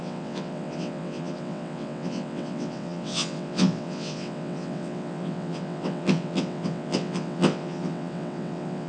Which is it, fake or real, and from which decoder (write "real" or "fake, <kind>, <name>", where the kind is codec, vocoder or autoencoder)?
fake, vocoder, WaveNeXt